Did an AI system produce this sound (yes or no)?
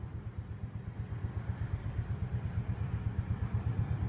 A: no